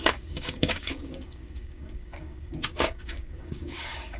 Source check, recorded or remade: remade